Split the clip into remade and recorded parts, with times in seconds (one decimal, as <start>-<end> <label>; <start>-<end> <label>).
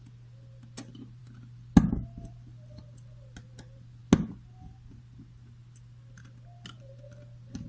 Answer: 0.0-7.7 recorded